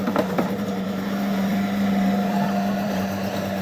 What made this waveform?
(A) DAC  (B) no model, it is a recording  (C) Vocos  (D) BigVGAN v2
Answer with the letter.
D